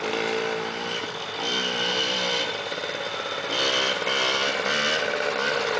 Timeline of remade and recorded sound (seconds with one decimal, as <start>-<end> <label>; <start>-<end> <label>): 0.0-2.8 remade; 2.8-5.8 recorded